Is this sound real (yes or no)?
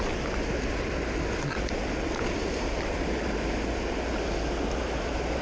yes